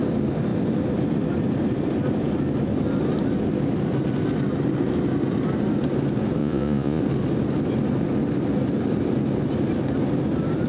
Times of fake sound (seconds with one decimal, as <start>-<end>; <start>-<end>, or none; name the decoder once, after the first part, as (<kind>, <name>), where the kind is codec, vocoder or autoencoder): 6.4-7.0 (vocoder, Vocos)